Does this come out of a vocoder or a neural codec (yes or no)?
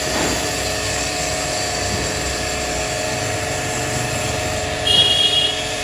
yes